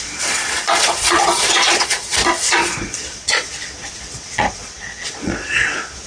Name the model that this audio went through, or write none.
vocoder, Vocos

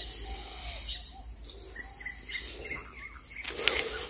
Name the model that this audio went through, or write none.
none